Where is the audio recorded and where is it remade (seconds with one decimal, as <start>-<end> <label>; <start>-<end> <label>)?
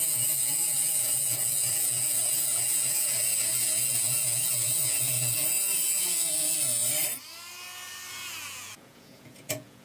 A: 0.0-6.8 remade; 6.8-8.1 recorded; 8.1-9.8 remade